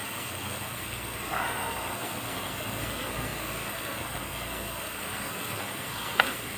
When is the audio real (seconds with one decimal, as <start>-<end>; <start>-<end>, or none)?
none